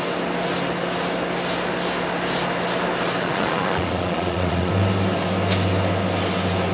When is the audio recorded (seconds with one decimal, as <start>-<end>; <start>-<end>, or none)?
0.0-3.2; 4.7-6.7